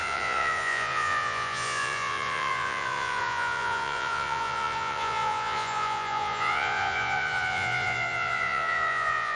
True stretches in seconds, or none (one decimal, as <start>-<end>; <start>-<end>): none